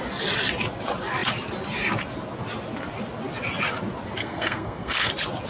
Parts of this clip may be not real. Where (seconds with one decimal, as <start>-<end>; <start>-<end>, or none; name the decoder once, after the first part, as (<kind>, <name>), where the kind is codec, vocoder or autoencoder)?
4.2-5.1 (codec, SNAC)